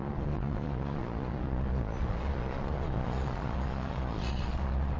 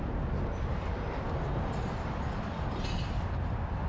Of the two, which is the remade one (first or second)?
first